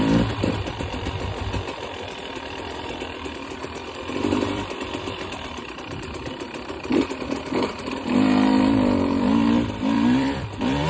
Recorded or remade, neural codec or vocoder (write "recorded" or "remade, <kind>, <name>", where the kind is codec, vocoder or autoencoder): remade, vocoder, BigVGAN v2